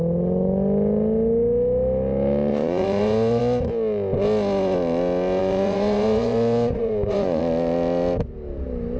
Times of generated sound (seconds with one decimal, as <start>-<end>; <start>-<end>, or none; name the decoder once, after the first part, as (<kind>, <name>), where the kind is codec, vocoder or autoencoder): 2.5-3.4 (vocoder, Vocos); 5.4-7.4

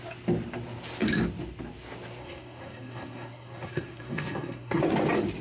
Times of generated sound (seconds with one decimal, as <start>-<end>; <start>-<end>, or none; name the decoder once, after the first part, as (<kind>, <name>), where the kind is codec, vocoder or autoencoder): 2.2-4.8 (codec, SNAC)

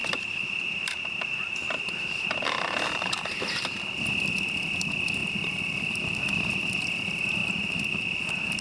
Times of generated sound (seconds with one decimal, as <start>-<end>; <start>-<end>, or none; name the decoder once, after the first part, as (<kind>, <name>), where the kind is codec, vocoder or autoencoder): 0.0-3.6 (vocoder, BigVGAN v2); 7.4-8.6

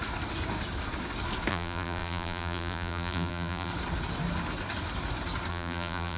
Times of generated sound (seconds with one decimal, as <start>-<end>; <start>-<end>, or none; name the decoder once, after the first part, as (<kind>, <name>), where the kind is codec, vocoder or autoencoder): 1.5-3.7 (vocoder, BigVGAN v2); 5.5-6.2

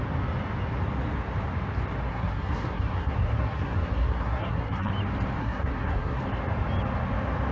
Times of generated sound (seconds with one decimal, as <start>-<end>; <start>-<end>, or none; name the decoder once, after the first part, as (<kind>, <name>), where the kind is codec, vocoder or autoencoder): 2.1-4.9 (codec, SNAC); 5.4-6.2

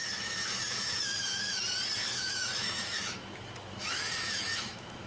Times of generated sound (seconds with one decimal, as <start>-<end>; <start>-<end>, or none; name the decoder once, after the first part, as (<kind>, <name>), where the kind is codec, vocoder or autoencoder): 0.0-1.6 (autoencoder, DAC-VAE); 2.0-5.1

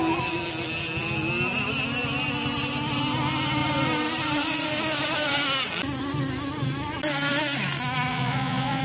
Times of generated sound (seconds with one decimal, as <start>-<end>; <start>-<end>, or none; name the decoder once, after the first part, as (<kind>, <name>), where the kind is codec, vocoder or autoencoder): 8.1-8.8 (vocoder, Vocos)

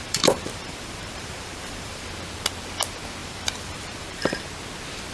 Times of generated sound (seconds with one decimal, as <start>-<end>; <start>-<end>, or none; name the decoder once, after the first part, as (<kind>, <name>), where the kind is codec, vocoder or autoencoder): 0.0-2.1 (vocoder, BigVGAN v2); 3.2-4.5